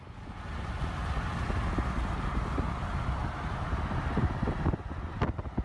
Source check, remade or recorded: recorded